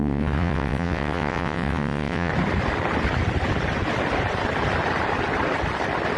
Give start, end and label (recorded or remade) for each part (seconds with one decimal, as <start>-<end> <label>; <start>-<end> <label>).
0.0-2.3 remade; 2.3-6.2 recorded